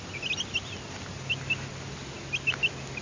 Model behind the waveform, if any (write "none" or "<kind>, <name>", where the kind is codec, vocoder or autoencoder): none